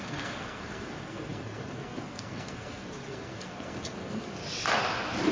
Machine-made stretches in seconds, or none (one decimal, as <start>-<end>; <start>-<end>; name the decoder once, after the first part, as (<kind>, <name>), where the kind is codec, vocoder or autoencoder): 0.0-4.4 (codec, SNAC)